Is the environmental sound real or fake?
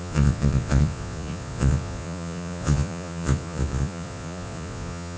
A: fake